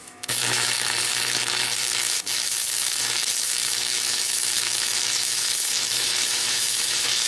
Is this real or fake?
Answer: fake